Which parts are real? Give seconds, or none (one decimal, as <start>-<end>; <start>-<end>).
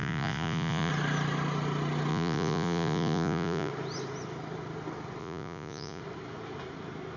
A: 0.9-2.1; 3.7-5.2; 6.0-7.2